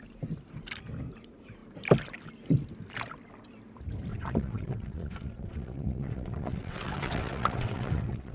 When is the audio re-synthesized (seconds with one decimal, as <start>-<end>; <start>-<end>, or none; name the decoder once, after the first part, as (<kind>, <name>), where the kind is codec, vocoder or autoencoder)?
4.1-8.3 (vocoder, WaveNeXt)